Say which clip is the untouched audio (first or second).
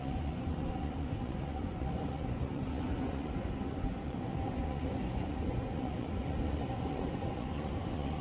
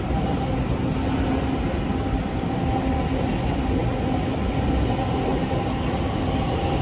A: second